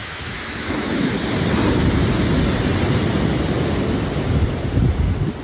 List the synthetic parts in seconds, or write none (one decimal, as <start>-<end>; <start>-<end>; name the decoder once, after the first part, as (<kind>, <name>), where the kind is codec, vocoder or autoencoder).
0.0-1.1 (autoencoder, DAC-VAE)

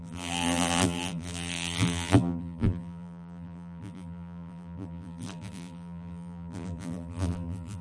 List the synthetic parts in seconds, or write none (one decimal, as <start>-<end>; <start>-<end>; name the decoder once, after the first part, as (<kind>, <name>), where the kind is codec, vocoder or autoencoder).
0.0-7.8 (vocoder, BigVGAN v2)

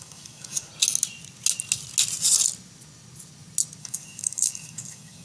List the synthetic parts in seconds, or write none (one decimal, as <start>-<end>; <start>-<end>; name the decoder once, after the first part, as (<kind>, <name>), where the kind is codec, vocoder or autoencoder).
0.0-0.7 (codec, DAC); 3.8-5.2

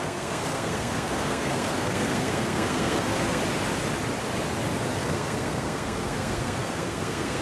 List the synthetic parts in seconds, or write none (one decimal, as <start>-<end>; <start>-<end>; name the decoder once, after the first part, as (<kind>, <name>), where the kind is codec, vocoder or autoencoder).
0.0-3.4 (codec, SNAC); 4.9-7.4

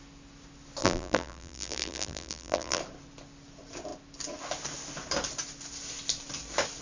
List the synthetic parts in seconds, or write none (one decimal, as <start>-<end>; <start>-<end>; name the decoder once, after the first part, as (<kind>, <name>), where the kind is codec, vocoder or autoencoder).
0.8-2.8 (vocoder, BigVGAN v2)